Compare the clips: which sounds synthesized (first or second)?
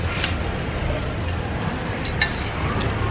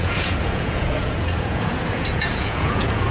second